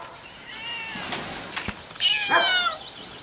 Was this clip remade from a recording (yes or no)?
no